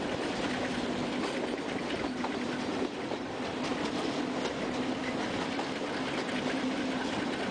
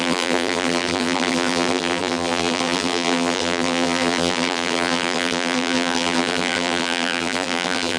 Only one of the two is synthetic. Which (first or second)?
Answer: second